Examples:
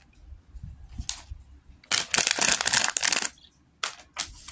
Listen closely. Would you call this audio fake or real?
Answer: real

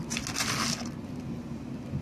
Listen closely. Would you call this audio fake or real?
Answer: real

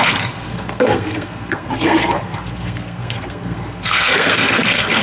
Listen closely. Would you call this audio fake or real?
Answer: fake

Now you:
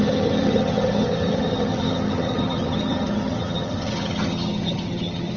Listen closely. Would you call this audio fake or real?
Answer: fake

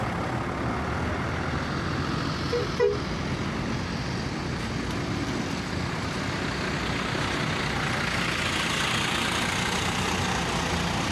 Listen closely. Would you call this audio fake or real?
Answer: real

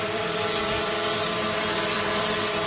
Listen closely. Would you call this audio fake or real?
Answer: fake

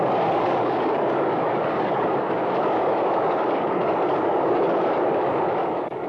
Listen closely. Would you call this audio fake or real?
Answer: fake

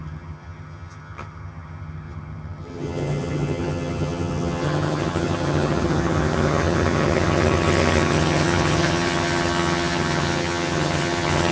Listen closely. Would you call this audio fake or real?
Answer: fake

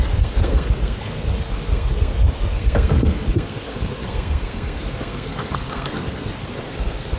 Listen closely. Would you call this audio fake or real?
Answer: fake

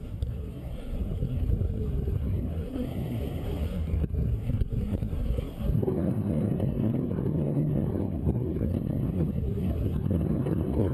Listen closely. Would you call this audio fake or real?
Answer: fake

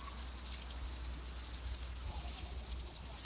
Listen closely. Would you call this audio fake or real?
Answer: real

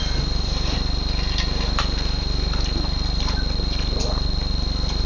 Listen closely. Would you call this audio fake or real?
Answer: real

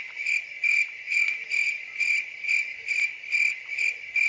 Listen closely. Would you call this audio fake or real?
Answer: real